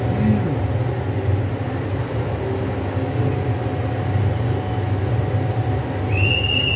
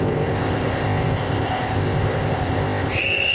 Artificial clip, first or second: second